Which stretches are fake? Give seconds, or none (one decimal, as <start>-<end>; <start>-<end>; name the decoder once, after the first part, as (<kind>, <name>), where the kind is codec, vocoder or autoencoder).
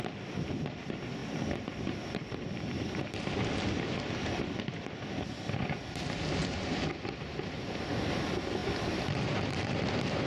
1.2-5.1 (vocoder, BigVGAN v2); 6.4-8.2; 8.6-9.9